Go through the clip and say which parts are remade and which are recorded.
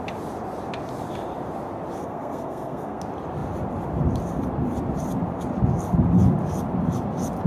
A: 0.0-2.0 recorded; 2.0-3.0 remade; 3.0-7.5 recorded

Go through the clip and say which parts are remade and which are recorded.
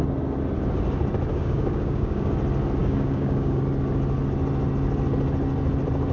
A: 0.0-1.3 recorded; 1.3-2.3 remade; 2.3-2.8 recorded; 2.8-3.6 remade; 3.6-6.1 recorded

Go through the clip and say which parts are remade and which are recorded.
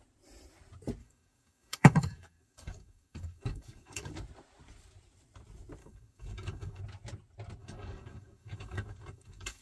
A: 0.0-1.0 recorded; 1.0-4.1 remade; 4.1-5.8 recorded; 5.8-6.8 remade; 6.8-7.6 recorded; 7.6-9.6 remade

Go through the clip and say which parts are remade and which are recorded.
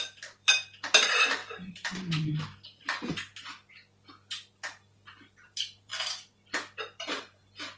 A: 0.0-3.3 remade; 3.3-4.5 recorded; 4.5-5.9 remade; 5.9-7.0 recorded; 7.0-7.8 remade